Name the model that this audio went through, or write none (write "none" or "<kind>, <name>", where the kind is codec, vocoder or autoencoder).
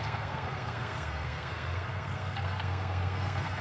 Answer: codec, SNAC